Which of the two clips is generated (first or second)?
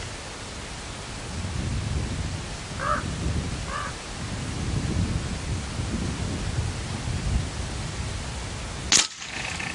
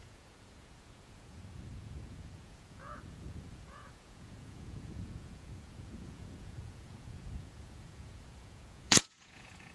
second